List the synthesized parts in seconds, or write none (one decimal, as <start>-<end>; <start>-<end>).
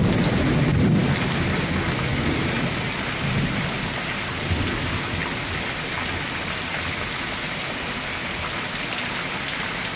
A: none